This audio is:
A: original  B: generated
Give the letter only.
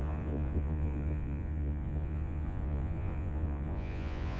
B